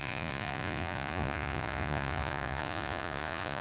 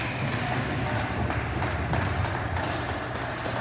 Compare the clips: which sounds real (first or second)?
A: second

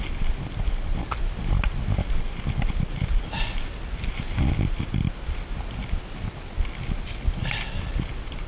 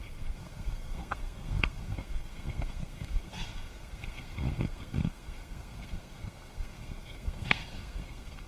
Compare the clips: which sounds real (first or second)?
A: first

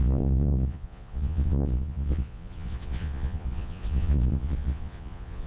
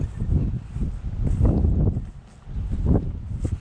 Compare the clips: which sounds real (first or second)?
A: second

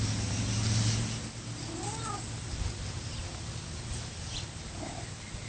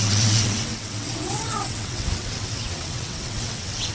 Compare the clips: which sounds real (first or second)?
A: first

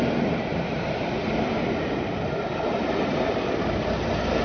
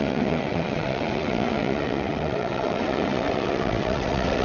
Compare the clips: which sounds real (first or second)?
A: first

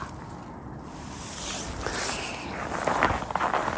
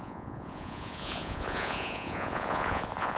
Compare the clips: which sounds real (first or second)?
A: first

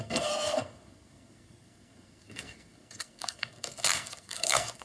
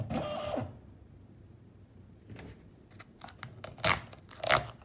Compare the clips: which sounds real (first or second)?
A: second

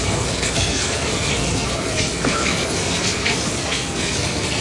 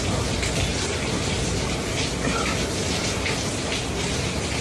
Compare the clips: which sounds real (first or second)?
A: second